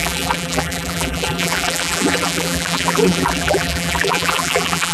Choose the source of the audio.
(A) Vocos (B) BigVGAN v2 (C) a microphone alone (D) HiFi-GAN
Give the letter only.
B